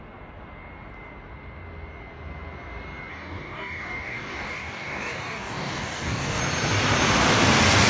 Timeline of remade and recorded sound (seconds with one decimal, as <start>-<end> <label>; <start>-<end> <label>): 0.0-3.1 recorded; 3.1-6.4 remade; 6.4-7.9 recorded